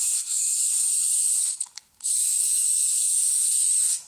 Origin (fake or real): fake